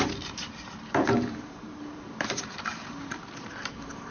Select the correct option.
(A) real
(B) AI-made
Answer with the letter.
B